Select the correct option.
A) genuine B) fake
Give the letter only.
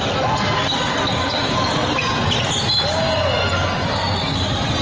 A